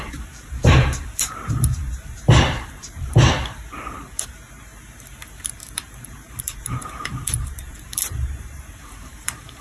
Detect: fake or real fake